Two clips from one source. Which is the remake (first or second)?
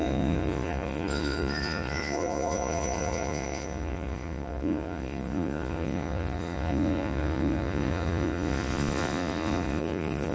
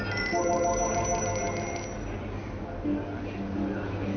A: first